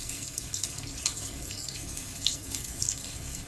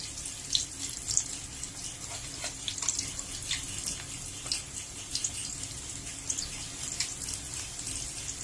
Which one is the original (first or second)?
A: second